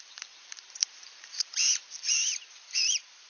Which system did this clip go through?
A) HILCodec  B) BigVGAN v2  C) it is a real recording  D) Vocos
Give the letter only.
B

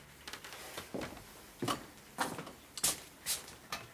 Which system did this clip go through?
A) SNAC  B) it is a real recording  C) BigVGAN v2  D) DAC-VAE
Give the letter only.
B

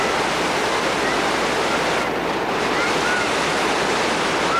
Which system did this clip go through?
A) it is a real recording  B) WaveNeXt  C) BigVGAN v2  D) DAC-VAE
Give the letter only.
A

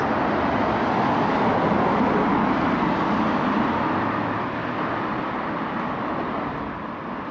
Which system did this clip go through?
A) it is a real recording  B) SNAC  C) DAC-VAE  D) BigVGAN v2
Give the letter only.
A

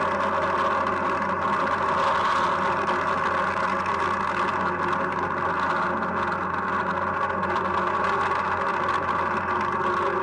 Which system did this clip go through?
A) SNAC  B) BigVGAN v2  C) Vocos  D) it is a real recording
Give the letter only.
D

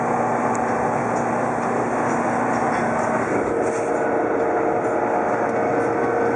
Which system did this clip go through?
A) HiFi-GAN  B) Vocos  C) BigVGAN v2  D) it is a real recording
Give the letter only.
D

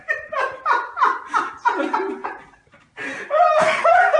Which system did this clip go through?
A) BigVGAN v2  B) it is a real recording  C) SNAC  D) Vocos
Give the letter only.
A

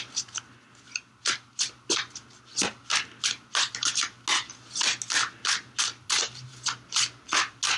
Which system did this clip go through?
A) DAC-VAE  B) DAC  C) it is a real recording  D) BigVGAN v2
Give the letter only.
C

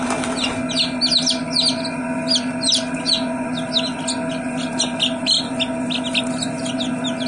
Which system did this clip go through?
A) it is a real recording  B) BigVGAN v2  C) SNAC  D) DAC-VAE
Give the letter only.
A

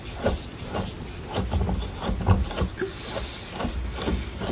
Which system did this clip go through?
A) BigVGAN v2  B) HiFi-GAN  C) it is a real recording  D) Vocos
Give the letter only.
C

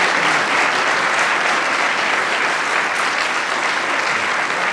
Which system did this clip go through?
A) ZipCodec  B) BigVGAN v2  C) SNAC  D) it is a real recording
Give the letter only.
D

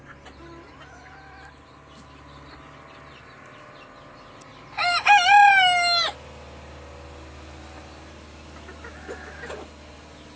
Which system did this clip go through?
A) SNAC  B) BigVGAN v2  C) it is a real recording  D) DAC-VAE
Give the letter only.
C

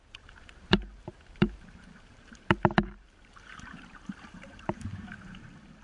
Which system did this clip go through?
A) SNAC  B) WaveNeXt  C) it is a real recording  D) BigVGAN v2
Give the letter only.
D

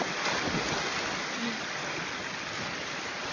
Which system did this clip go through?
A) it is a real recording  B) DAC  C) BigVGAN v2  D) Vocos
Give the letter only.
A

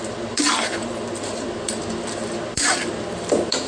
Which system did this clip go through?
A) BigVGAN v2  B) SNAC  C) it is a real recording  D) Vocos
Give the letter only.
A